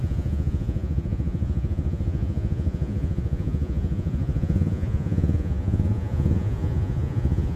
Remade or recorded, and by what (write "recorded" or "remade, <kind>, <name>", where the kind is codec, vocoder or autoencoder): remade, vocoder, Vocos